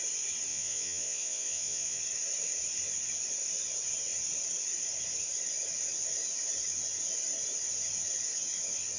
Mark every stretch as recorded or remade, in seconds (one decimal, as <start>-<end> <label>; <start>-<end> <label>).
0.0-0.5 recorded; 0.5-2.0 remade; 2.0-9.0 recorded